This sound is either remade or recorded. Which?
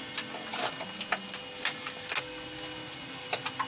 recorded